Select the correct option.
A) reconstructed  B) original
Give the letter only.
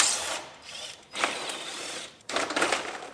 A